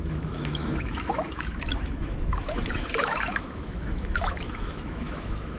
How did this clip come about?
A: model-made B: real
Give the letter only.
A